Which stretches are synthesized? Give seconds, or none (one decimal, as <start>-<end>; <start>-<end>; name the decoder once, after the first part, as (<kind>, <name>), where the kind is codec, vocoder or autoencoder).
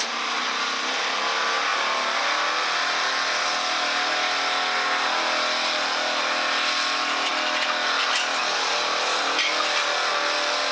none